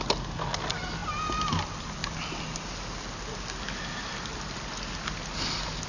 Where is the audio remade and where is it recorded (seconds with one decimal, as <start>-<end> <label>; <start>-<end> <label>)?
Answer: 0.0-5.9 recorded